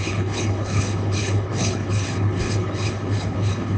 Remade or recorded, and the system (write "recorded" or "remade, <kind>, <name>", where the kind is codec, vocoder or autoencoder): remade, codec, HILCodec